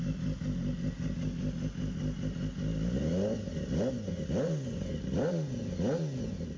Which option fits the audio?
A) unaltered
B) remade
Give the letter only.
A